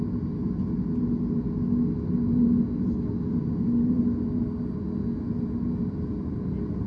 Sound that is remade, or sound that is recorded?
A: recorded